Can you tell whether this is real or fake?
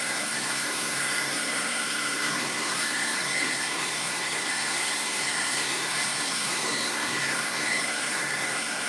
fake